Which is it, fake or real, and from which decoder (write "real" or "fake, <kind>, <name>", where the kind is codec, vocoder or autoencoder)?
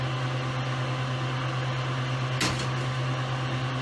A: real